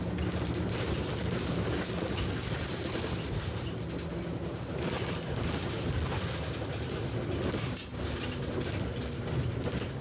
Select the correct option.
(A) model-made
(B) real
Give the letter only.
B